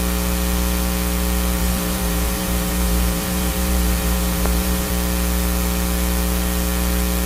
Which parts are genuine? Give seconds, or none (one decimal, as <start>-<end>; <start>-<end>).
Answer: 0.0-1.6; 4.9-7.3